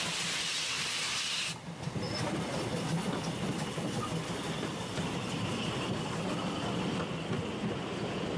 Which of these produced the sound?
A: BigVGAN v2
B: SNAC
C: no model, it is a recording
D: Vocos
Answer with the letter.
C